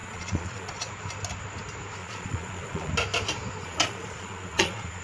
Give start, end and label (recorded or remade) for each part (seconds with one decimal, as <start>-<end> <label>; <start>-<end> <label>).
0.0-0.9 remade; 0.9-2.0 recorded; 2.0-2.9 remade; 2.9-3.6 recorded; 3.6-5.0 remade

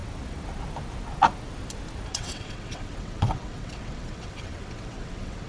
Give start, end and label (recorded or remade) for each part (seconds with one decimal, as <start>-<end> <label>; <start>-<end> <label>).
0.0-2.1 recorded; 2.1-5.5 remade

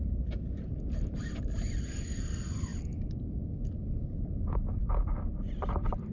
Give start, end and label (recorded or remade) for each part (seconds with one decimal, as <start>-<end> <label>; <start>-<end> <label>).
0.0-6.1 recorded